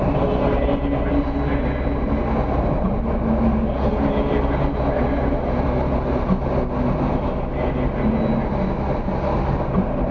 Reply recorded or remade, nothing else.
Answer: recorded